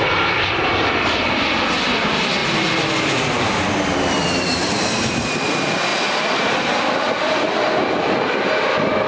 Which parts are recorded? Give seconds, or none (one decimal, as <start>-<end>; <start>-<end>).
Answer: 2.4-3.0